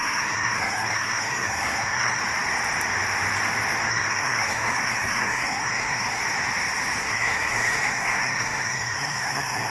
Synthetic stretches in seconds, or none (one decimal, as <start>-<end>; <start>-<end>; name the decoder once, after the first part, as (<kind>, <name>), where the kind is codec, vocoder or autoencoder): 0.0-2.2 (codec, SNAC); 3.9-6.2; 7.0-9.7